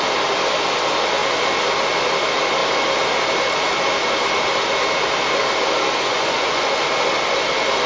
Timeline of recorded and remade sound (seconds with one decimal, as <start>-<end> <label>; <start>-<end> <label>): 0.0-6.1 recorded; 6.1-6.7 remade; 6.7-7.9 recorded

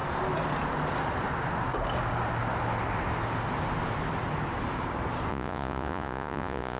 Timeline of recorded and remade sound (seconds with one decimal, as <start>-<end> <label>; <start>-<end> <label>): 0.0-5.3 recorded; 5.3-6.8 remade

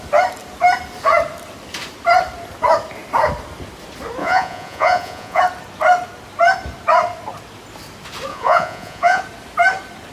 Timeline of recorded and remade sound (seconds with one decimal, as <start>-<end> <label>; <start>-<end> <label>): 0.0-4.2 recorded; 4.2-5.4 remade; 5.4-8.3 recorded; 8.3-9.2 remade; 9.2-10.1 recorded

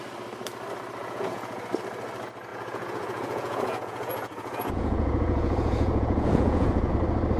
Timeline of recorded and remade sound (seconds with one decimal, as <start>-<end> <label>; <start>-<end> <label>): 0.0-1.0 recorded; 1.0-1.6 remade; 1.6-2.5 recorded; 2.5-6.9 remade; 6.9-7.4 recorded